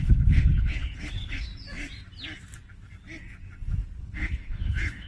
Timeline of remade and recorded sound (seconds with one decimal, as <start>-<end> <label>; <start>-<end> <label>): 0.0-1.5 remade; 1.5-4.0 recorded; 4.0-5.1 remade